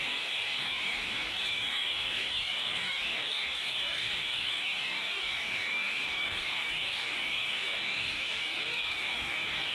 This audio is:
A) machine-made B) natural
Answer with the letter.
A